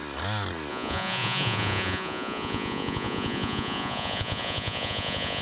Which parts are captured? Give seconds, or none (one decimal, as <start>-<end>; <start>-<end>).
0.0-0.7